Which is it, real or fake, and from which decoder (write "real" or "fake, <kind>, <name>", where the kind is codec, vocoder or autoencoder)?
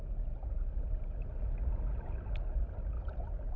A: real